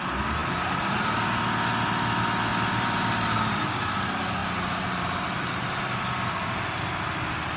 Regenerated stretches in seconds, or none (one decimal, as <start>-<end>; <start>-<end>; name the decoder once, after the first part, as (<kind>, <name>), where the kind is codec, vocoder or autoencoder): 2.5-3.6 (vocoder, BigVGAN v2); 4.4-5.4